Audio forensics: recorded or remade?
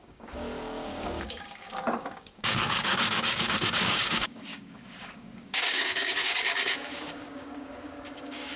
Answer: remade